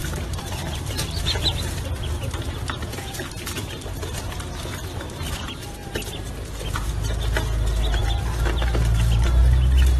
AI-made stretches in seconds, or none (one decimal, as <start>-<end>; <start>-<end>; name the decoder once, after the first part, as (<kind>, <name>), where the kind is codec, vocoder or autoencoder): 0.0-4.3 (vocoder, BigVGAN v2); 4.7-5.3; 8.0-9.4